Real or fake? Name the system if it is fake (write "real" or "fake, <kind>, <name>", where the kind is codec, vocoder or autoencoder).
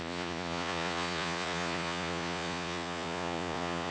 fake, vocoder, Vocos